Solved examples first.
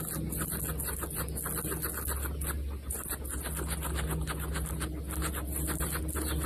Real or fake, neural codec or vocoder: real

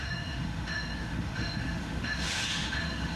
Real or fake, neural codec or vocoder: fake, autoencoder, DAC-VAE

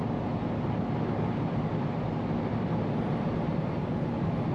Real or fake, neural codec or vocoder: real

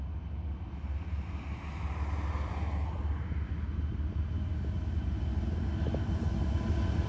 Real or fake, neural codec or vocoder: real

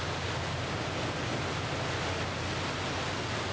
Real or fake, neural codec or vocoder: real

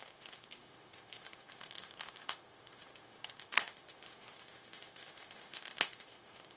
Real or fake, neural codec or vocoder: fake, autoencoder, DAC-VAE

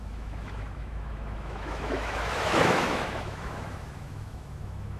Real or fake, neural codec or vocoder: fake, autoencoder, DAC-VAE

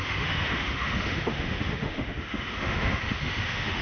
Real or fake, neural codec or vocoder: fake, autoencoder, DAC-VAE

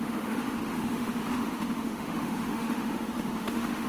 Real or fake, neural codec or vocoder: fake, autoencoder, DAC-VAE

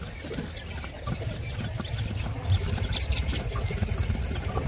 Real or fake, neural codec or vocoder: real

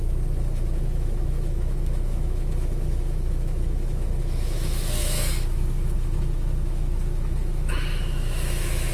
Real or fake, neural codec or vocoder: fake, autoencoder, DAC-VAE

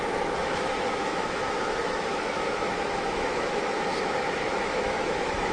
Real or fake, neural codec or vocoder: fake, autoencoder, DAC-VAE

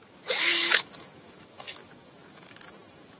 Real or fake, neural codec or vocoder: fake, autoencoder, DAC-VAE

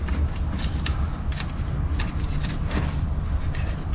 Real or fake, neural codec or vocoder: real